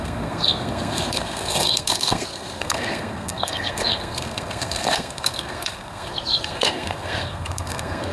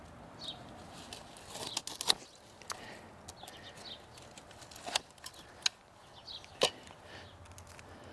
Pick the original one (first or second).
second